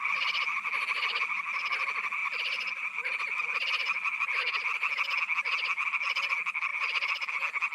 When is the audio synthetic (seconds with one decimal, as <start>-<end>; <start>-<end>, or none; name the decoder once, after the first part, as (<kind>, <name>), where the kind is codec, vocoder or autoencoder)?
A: 2.2-5.2 (vocoder, BigVGAN v2); 6.7-7.3